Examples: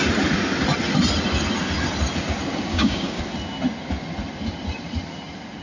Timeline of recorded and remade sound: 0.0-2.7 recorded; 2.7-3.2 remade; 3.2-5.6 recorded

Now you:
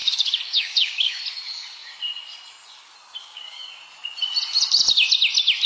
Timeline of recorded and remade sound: 0.0-1.2 remade; 1.2-3.2 recorded; 3.2-3.8 remade; 3.8-5.7 recorded

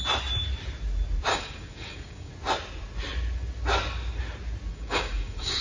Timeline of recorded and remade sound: 0.0-1.3 recorded; 1.3-2.3 remade; 2.3-4.7 recorded; 4.7-5.6 remade

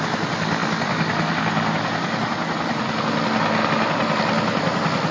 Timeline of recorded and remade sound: 0.0-5.1 recorded